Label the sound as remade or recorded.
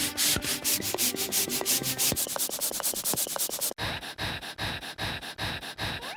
recorded